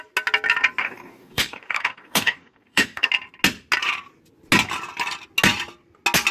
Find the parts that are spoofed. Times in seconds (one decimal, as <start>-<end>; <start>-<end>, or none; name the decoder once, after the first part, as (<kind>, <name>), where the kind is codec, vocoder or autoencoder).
0.8-3.1 (codec, DAC)